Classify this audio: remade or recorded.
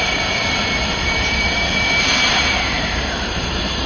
remade